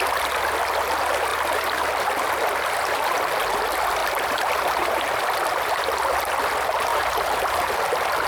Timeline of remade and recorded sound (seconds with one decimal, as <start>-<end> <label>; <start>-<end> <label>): 0.0-1.3 recorded; 1.3-1.8 remade; 1.8-4.0 recorded; 4.0-5.0 remade; 5.0-6.9 recorded; 6.9-7.7 remade; 7.7-8.3 recorded